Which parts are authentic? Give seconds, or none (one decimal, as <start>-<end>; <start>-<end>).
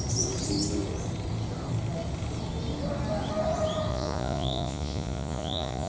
0.0-3.9